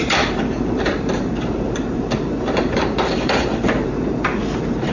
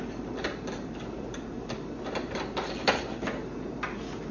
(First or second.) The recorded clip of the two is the second